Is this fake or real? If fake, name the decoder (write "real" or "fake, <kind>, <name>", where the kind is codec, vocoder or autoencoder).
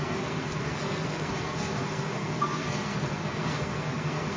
fake, codec, SNAC